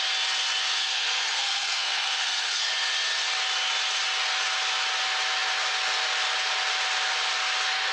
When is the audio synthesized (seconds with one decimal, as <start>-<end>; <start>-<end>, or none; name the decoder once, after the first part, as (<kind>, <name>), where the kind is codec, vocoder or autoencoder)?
0.8-2.7 (codec, SNAC)